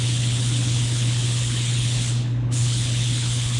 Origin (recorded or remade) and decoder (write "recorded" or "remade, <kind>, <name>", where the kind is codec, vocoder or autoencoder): remade, codec, HILCodec